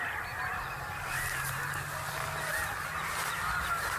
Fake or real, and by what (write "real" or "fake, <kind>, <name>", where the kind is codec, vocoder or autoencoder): real